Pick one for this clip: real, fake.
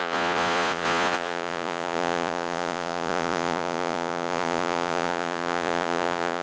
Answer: fake